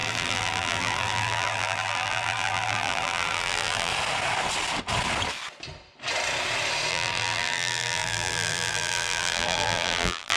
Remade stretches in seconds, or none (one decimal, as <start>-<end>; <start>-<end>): 0.0-3.9; 6.9-10.4